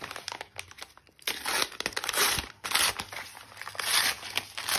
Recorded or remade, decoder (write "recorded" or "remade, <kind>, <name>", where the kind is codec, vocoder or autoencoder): recorded